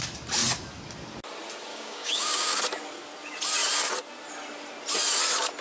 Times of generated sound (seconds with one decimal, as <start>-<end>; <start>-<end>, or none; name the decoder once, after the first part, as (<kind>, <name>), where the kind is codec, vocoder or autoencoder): 1.7-2.6 (codec, DAC)